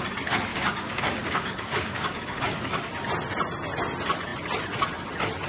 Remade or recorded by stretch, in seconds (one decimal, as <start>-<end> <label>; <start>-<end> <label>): 0.0-0.5 recorded; 0.5-2.9 remade; 2.9-5.5 recorded